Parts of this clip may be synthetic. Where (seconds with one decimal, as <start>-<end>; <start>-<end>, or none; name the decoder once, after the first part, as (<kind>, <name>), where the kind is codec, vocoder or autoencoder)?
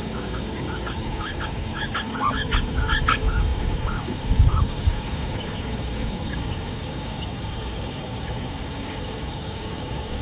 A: 0.0-10.2 (codec, DAC)